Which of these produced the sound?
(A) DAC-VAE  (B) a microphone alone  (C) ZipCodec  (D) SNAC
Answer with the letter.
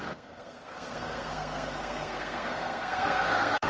D